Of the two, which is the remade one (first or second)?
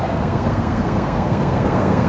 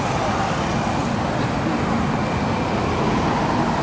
first